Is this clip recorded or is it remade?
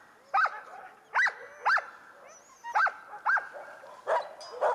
recorded